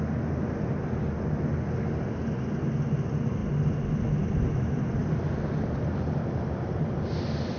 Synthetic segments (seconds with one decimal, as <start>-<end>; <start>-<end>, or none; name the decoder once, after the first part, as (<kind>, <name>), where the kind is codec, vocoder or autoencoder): 5.0-7.6 (vocoder, BigVGAN v2)